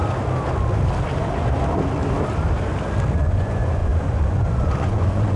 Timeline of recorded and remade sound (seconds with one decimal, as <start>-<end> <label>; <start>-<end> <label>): 0.0-3.2 recorded; 3.2-5.4 remade